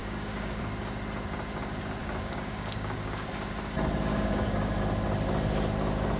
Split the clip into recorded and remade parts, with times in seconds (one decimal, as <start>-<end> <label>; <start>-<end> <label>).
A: 0.0-0.6 remade; 0.6-2.0 recorded; 2.0-3.3 remade; 3.3-4.1 recorded; 4.1-4.8 remade; 4.8-6.2 recorded